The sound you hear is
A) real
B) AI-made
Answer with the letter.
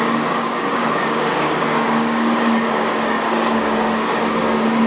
B